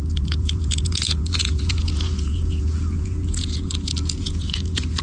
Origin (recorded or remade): remade